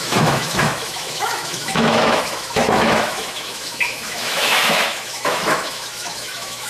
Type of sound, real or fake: fake